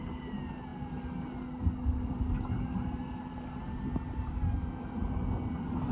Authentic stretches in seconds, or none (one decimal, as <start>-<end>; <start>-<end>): 0.0-5.9